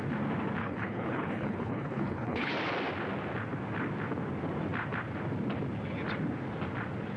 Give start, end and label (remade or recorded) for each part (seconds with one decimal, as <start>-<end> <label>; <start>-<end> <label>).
0.0-0.6 recorded; 0.6-2.5 remade; 2.5-7.2 recorded